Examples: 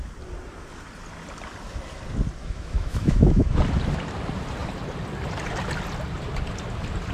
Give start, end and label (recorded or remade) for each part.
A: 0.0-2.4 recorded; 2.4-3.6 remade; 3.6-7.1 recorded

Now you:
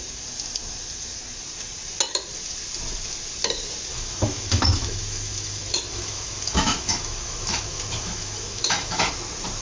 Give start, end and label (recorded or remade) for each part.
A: 0.0-3.9 recorded; 3.9-9.1 remade; 9.1-9.6 recorded

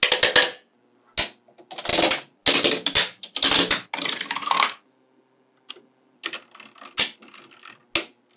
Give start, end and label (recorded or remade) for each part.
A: 0.0-8.4 recorded

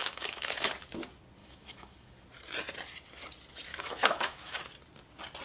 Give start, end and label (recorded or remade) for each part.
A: 0.0-0.7 remade; 0.7-1.4 recorded; 1.4-2.1 remade; 2.1-3.7 recorded; 3.7-4.6 remade; 4.6-5.4 recorded

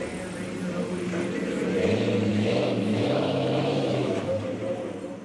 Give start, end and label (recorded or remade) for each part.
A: 0.0-2.3 recorded; 2.3-4.3 remade; 4.3-5.2 recorded